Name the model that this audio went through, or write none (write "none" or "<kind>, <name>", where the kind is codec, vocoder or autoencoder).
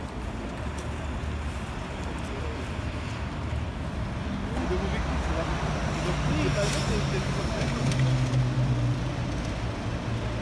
none